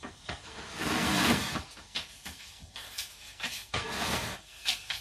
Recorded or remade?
remade